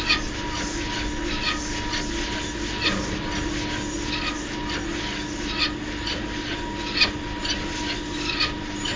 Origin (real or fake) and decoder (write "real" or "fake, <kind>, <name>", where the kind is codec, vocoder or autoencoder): real